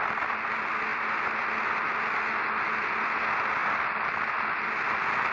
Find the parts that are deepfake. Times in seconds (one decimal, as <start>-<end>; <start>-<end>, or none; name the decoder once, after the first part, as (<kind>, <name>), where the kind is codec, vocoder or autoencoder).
none